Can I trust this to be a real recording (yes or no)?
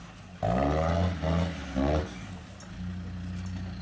yes